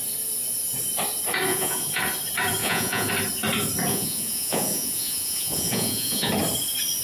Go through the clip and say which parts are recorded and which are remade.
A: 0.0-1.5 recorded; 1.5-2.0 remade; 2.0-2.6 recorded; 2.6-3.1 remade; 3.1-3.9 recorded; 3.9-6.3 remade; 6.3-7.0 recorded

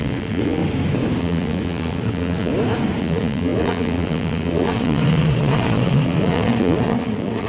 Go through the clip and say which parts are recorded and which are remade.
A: 0.0-0.6 remade; 0.6-1.2 recorded; 1.2-2.5 remade; 2.5-3.0 recorded; 3.0-7.5 remade

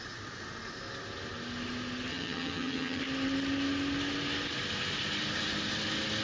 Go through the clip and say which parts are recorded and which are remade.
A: 0.0-2.1 recorded; 2.1-3.0 remade; 3.0-6.2 recorded

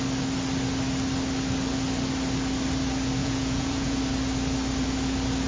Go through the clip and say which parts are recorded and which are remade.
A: 0.0-3.2 recorded; 3.2-4.0 remade; 4.0-5.5 recorded

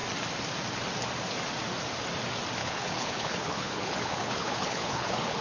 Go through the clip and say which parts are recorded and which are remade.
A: 0.0-2.6 recorded; 2.6-5.4 remade